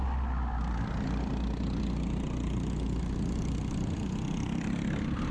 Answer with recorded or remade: recorded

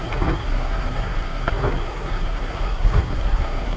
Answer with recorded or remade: remade